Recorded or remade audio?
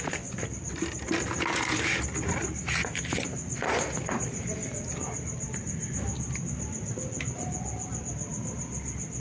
recorded